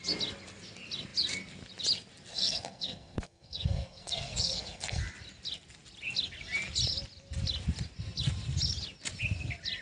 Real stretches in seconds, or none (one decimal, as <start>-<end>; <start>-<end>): 0.0-2.3; 5.0-9.8